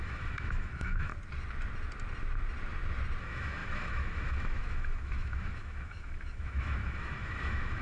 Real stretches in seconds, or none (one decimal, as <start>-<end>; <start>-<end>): 1.1-3.2